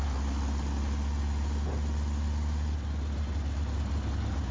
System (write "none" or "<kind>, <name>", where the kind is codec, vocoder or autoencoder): none